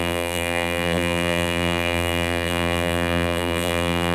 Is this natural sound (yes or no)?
no